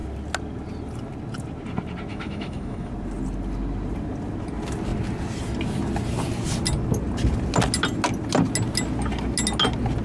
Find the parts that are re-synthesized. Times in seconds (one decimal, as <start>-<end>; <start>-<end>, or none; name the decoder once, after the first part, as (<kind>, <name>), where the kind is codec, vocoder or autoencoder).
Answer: 2.1-2.9 (autoencoder, DAC-VAE)